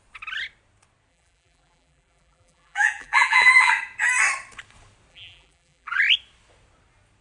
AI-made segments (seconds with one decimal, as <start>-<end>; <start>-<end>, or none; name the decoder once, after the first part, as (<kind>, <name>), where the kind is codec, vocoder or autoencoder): 1.1-3.7 (vocoder, BigVGAN v2); 5.1-6.0